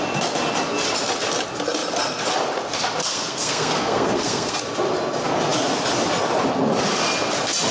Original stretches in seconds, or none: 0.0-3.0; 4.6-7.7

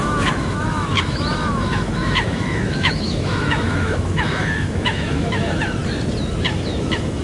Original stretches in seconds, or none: 5.8-6.5

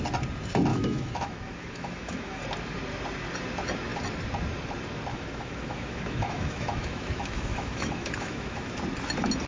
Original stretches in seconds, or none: 0.0-0.7; 2.4-5.1; 8.8-9.5

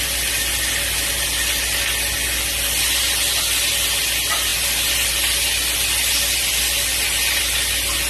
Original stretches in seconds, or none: 0.0-8.1

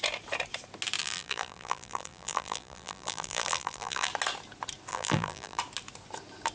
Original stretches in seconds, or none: 0.0-1.0; 4.1-4.9; 5.6-6.5

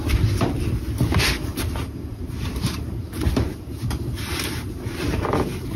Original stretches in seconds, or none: 0.0-3.0

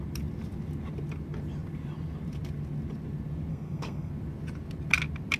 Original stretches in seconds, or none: 0.0-3.5; 4.1-5.4

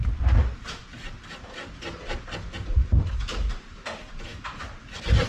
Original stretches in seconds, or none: 0.0-5.3